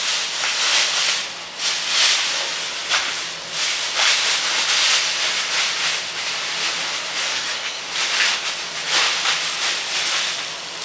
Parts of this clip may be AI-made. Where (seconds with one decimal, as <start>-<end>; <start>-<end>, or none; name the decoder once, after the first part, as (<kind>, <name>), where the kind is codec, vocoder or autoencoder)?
7.2-7.8 (codec, SNAC)

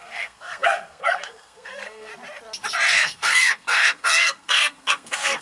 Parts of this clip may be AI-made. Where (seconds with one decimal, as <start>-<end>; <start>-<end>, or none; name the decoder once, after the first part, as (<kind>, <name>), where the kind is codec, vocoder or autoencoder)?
0.0-2.1 (codec, SNAC); 2.9-5.4

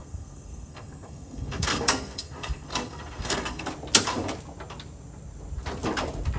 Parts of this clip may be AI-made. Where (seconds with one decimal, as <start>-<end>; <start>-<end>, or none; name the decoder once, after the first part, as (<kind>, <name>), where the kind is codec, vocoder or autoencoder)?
0.0-3.7 (codec, SNAC)

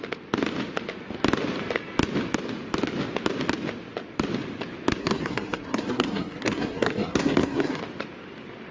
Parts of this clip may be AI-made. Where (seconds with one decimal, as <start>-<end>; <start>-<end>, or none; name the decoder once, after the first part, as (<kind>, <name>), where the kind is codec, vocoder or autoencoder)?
5.0-7.8 (codec, SNAC)